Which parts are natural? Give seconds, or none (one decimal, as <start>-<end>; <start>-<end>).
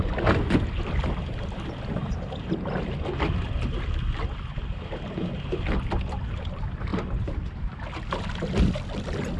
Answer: 0.0-9.4